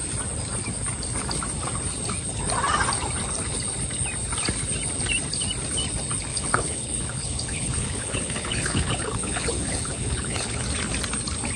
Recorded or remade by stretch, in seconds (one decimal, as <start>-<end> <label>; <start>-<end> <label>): 0.0-6.3 recorded; 6.3-10.6 remade; 10.6-11.6 recorded